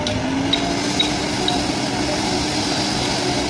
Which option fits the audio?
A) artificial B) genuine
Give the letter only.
B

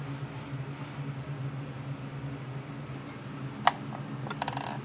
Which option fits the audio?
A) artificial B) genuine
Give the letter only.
B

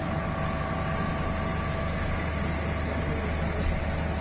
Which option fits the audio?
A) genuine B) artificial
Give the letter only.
A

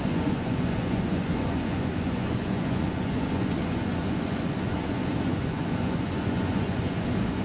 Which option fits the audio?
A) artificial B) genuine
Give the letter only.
A